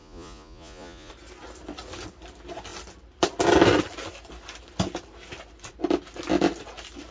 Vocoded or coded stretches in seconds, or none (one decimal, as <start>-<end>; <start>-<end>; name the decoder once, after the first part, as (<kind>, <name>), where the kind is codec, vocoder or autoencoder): 0.0-1.1 (vocoder, Vocos)